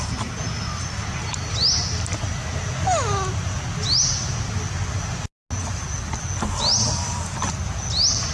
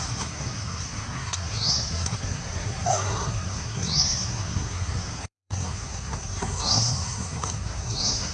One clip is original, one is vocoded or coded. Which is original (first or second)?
first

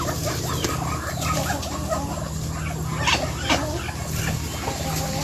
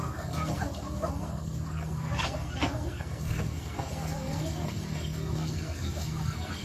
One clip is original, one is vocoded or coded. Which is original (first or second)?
first